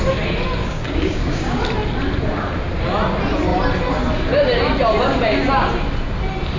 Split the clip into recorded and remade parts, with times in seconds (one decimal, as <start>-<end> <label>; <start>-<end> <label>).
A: 0.0-0.6 recorded; 0.6-1.6 remade; 1.6-6.6 recorded